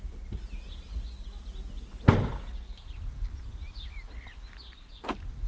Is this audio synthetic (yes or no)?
no